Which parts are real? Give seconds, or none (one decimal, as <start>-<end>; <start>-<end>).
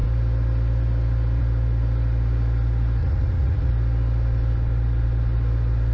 0.0-3.0; 3.7-5.9